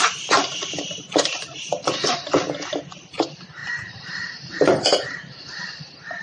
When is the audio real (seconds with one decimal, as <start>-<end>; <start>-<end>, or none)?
0.0-6.2